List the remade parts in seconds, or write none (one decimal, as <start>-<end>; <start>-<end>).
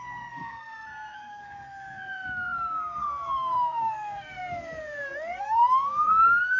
0.0-6.6